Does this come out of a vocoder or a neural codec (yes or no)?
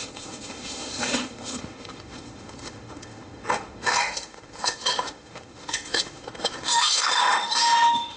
yes